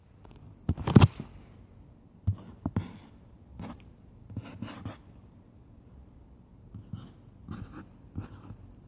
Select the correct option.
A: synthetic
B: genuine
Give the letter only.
B